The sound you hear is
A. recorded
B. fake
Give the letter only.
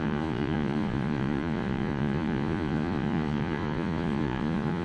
B